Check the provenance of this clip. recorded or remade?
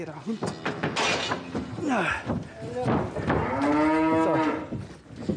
recorded